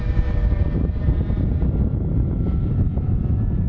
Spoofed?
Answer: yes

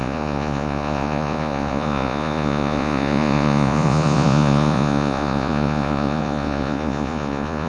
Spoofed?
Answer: yes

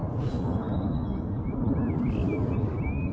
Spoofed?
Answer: no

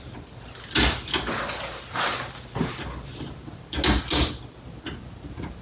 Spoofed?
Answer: no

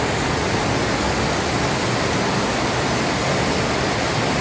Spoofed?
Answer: no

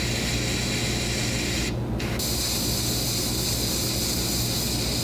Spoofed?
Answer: no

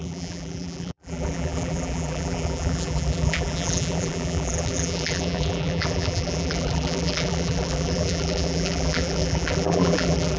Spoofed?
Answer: yes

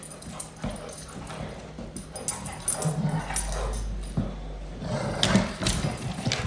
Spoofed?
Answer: no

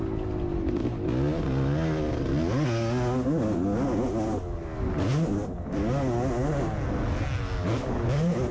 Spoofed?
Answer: no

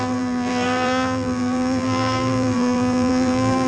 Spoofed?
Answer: yes